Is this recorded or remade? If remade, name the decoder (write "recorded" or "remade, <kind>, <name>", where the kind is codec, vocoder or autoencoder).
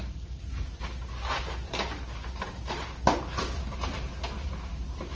recorded